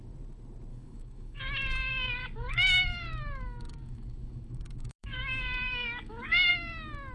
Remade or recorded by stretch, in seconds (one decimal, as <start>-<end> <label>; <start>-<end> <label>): 0.0-0.7 recorded; 0.7-1.4 remade; 1.4-2.2 recorded; 2.2-6.5 remade; 6.5-7.1 recorded